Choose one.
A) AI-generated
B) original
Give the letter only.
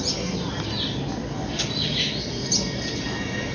B